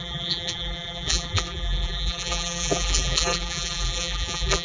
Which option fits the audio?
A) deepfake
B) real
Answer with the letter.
A